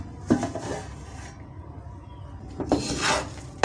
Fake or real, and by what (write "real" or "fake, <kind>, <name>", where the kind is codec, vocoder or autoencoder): real